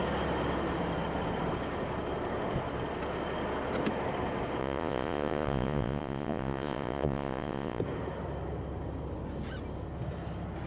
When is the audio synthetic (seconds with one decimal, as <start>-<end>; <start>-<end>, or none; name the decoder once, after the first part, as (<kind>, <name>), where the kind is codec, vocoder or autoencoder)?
4.6-7.8 (vocoder, Vocos)